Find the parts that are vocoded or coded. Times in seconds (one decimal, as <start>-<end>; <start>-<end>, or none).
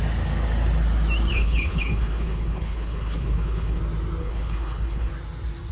1.3-3.8; 4.2-5.1